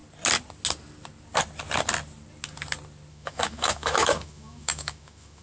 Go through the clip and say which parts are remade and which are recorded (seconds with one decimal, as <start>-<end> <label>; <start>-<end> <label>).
0.0-3.1 recorded; 3.1-5.4 remade